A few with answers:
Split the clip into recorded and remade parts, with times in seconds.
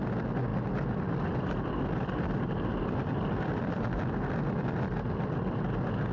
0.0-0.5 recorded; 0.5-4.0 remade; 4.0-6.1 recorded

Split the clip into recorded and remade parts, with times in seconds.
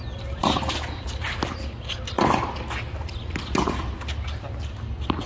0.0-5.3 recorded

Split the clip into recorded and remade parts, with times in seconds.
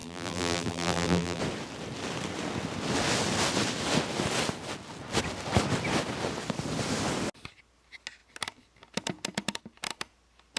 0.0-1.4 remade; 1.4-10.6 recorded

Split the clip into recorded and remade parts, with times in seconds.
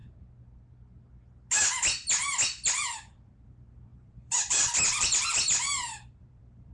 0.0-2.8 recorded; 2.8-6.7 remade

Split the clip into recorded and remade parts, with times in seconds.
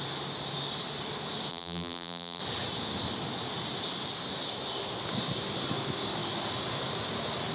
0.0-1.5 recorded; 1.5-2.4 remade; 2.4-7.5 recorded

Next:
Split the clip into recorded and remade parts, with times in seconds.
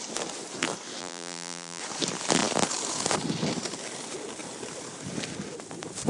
0.0-1.0 recorded; 1.0-1.8 remade; 1.8-6.1 recorded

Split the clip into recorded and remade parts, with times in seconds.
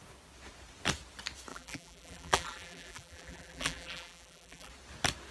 0.0-1.5 recorded; 1.5-4.7 remade; 4.7-5.3 recorded